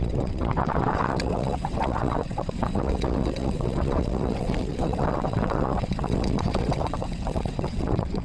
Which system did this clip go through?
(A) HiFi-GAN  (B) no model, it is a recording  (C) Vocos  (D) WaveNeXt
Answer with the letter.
D